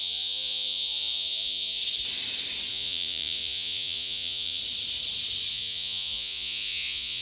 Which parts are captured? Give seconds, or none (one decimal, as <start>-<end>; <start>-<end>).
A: 1.8-2.7; 4.6-5.5

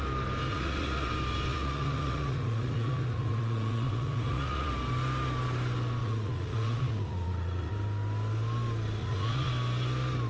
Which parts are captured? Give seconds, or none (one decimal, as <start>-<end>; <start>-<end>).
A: 0.0-0.5; 1.1-1.5; 4.7-6.0; 7.7-9.0; 9.5-10.3

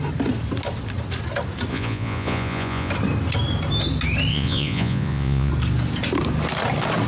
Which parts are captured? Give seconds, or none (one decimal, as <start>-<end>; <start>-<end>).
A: 0.0-1.7; 2.9-4.3; 5.5-7.1

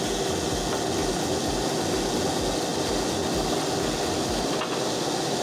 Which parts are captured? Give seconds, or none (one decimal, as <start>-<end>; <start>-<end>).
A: 0.0-5.4

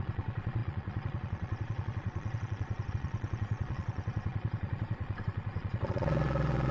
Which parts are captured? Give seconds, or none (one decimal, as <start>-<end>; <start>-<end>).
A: none

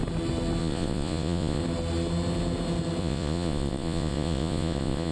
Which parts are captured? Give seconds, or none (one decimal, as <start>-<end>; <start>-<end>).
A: 0.0-0.6; 1.6-3.0

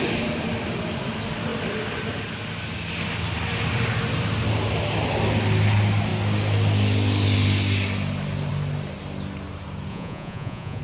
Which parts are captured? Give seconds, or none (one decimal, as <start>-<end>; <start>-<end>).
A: 0.0-9.9